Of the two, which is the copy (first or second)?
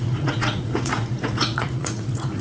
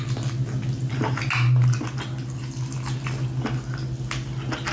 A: first